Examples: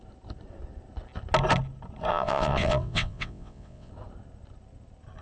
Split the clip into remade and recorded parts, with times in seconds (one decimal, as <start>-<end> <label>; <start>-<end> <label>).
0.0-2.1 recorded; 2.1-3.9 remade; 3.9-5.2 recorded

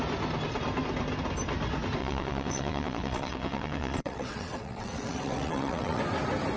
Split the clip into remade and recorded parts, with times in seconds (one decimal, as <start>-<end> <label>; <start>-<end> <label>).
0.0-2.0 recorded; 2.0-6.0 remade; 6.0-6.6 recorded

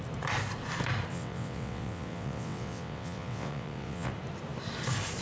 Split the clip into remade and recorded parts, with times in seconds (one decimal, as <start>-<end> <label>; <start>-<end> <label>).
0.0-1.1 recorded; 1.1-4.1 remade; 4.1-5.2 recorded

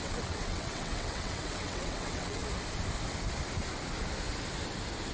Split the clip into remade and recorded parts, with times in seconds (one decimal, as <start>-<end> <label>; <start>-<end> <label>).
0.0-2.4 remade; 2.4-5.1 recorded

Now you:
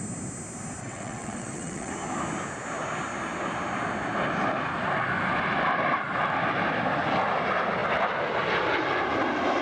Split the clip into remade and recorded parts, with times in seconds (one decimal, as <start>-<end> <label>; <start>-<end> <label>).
0.0-0.8 recorded; 0.8-1.9 remade; 1.9-9.6 recorded

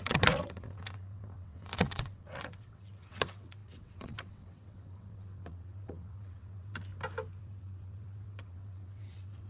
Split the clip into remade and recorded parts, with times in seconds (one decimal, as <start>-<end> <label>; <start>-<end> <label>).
0.0-6.9 remade; 6.9-7.4 recorded; 7.4-9.5 remade

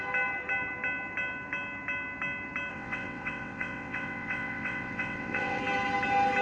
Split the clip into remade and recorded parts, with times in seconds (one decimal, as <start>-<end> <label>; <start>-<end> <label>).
0.0-2.7 recorded; 2.7-5.6 remade; 5.6-6.4 recorded

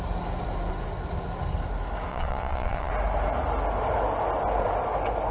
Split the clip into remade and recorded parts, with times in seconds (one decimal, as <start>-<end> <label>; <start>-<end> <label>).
0.0-2.1 recorded; 2.1-2.9 remade; 2.9-5.3 recorded